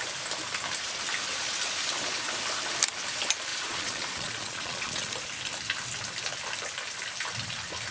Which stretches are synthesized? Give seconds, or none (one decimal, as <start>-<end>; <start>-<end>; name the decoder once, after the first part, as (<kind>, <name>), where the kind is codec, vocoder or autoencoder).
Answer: 3.5-5.1 (vocoder, Vocos)